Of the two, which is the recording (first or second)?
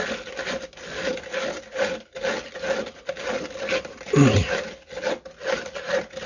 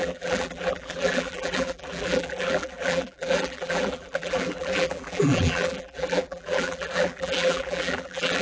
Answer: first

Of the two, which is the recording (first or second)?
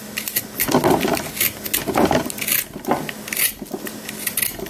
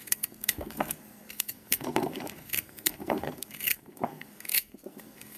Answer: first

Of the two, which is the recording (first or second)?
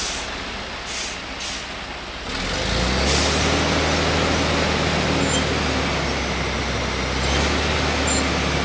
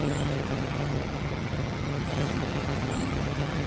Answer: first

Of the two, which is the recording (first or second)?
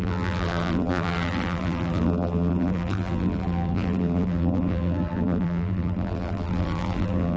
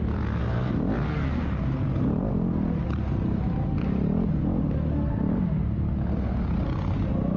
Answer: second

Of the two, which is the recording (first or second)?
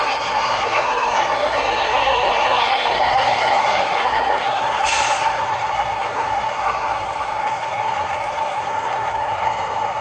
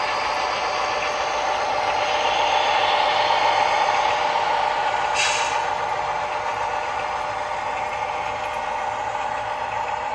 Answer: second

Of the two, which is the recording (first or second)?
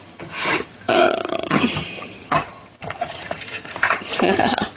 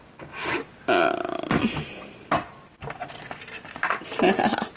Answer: second